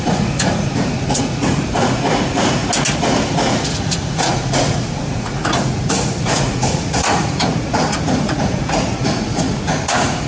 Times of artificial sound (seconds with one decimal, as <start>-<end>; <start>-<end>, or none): 0.0-2.6; 3.5-10.3